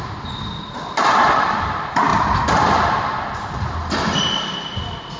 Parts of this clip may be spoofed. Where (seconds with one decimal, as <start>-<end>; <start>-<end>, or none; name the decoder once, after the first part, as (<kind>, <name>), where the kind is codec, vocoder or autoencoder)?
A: none

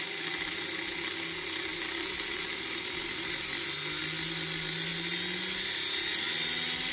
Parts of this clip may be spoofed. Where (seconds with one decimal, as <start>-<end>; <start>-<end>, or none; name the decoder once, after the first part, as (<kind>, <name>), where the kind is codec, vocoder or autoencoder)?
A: none